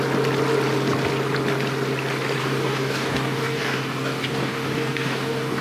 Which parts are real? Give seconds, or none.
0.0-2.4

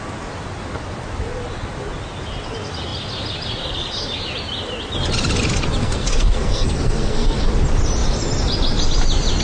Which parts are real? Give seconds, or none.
0.0-5.8; 7.4-9.4

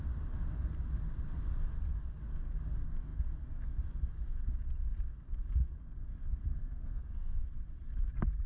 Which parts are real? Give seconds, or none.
0.0-6.5; 7.4-8.5

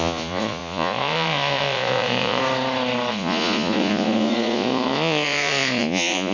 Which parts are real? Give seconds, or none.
2.4-3.1

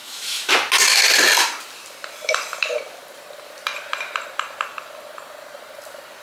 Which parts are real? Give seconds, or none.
0.5-6.2